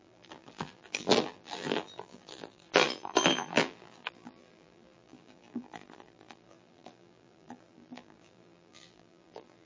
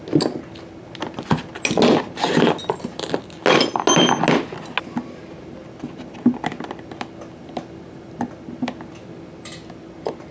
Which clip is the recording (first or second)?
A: second